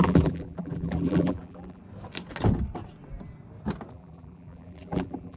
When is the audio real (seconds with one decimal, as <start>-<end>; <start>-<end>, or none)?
1.8-3.9